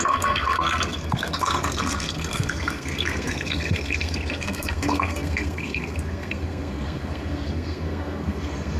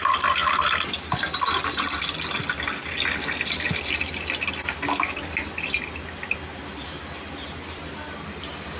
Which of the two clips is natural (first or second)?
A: second